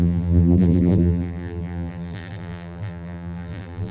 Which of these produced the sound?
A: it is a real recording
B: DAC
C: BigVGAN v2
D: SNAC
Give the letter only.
C